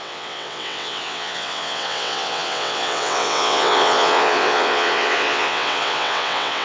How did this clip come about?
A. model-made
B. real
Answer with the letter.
A